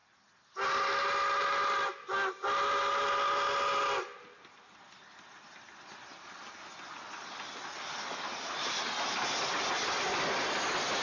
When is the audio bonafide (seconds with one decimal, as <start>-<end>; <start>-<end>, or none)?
0.0-11.0